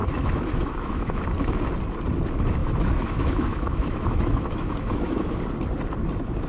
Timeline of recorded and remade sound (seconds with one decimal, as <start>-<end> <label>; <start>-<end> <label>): 0.0-1.2 remade; 1.2-2.6 recorded; 2.6-5.3 remade; 5.3-6.5 recorded